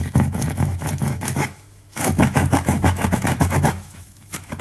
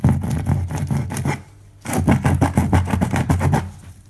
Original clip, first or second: second